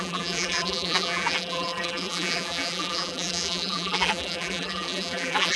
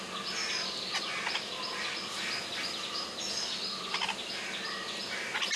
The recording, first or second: second